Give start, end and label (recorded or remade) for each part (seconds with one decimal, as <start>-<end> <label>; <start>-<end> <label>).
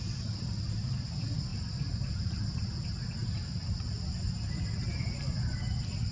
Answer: 0.0-6.1 recorded